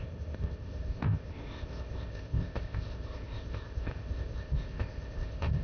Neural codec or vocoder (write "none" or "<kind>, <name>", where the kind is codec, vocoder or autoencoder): codec, ZipCodec